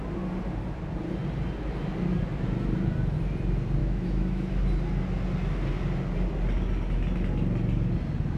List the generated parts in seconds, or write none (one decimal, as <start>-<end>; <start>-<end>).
3.8-4.5

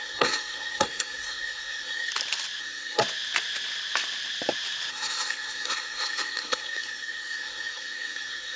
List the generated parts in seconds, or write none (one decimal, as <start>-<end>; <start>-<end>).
0.0-2.1; 2.6-3.0; 4.9-8.6